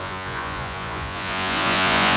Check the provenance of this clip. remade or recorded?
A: remade